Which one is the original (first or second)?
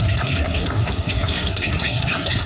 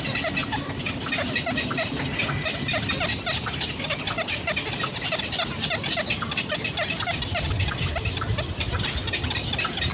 second